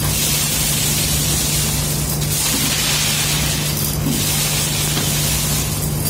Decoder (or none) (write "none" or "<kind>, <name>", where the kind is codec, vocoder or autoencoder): none